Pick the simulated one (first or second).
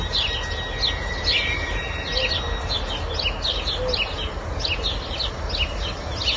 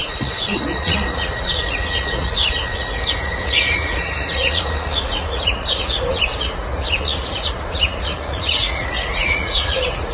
second